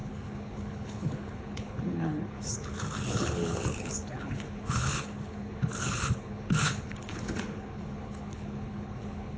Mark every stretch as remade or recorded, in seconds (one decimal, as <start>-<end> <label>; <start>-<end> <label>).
0.0-9.4 remade